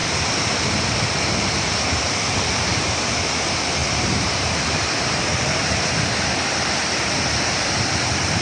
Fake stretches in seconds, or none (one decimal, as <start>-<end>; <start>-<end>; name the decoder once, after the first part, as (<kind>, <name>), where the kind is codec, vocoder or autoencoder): 0.9-8.4 (vocoder, BigVGAN v2)